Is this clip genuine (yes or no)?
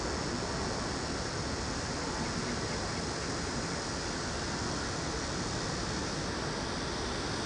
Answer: yes